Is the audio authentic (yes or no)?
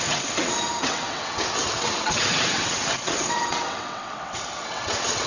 no